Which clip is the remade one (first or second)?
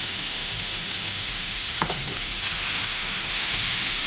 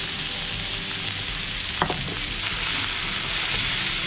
first